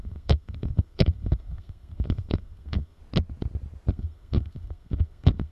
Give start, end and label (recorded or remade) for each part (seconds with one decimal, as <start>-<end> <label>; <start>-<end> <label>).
0.0-3.0 remade; 3.0-3.9 recorded; 3.9-5.5 remade